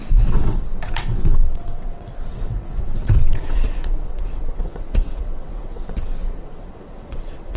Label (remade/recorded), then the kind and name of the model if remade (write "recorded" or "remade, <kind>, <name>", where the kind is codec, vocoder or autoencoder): remade, vocoder, WaveNeXt